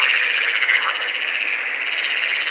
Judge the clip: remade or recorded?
recorded